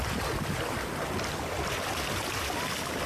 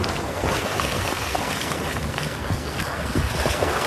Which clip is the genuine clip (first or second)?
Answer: first